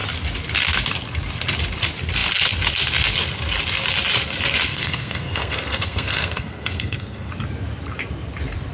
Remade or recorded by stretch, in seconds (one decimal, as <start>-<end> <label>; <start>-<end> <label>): 0.0-4.7 recorded; 4.7-7.3 remade; 7.3-8.7 recorded